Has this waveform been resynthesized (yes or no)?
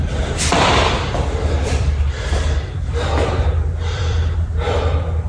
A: yes